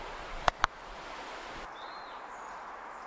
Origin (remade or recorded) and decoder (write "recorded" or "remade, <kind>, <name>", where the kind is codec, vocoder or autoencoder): remade, vocoder, BigVGAN v2